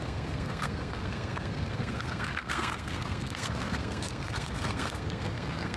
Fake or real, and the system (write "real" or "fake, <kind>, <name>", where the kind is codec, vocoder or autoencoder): fake, codec, SNAC